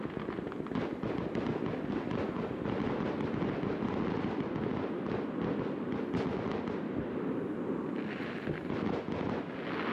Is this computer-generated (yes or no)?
no